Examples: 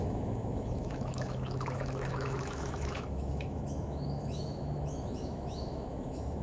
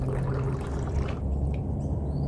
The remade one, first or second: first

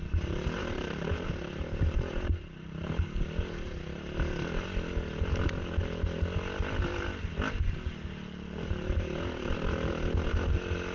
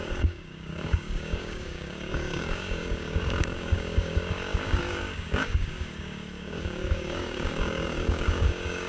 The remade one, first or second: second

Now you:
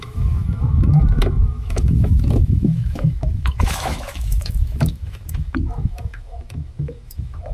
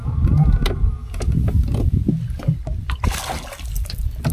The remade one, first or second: first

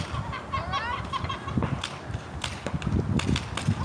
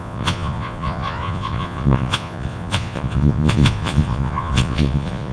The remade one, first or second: second